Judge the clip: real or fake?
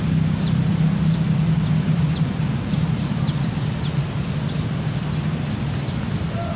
real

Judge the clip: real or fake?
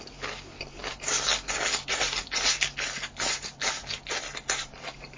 real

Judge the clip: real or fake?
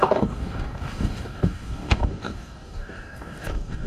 fake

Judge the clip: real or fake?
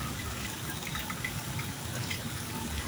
fake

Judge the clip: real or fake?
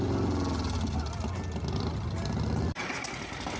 real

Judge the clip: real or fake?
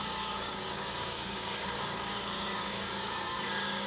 fake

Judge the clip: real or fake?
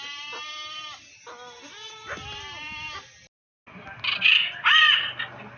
real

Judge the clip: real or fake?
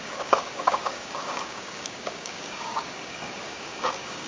fake